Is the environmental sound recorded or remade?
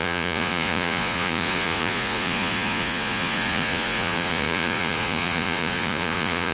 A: remade